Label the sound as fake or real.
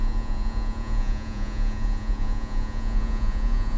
fake